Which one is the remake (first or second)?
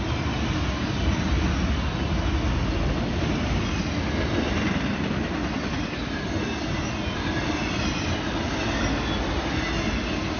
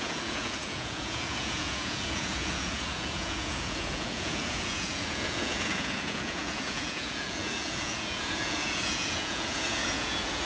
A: second